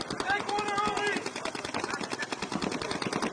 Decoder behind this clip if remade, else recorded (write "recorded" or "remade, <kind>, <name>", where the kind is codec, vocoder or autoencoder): recorded